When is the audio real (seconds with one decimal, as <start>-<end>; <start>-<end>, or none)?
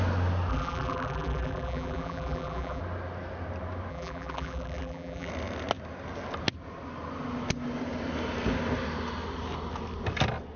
0.0-0.5; 2.8-3.9; 5.3-10.6